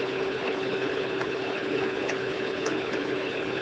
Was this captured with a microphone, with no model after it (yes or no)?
no